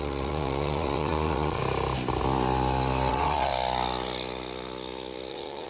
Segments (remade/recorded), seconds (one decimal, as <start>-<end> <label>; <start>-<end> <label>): 0.0-1.6 remade; 1.6-3.1 recorded; 3.1-3.5 remade; 3.5-5.3 recorded; 5.3-5.7 remade